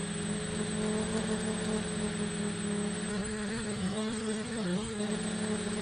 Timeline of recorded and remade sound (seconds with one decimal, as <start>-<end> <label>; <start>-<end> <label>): 0.0-3.1 recorded; 3.1-5.1 remade; 5.1-5.8 recorded